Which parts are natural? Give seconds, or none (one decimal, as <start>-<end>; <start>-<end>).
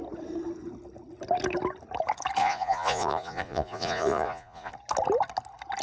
0.0-2.4; 4.7-5.8